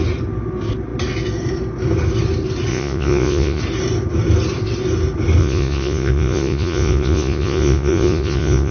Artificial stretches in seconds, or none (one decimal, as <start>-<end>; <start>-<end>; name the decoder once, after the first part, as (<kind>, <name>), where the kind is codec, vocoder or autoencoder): 2.7-3.6 (vocoder, Vocos); 5.4-8.7